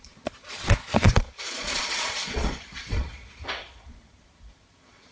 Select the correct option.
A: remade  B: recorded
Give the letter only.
A